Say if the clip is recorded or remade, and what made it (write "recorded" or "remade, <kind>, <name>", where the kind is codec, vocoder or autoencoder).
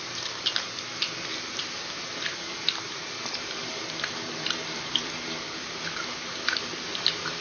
remade, vocoder, BigVGAN v2